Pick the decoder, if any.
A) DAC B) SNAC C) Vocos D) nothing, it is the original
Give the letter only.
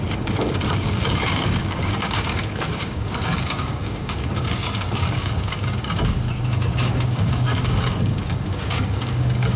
A